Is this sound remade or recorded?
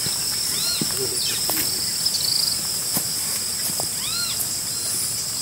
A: recorded